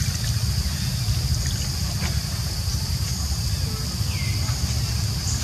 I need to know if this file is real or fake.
real